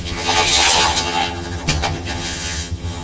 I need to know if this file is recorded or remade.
remade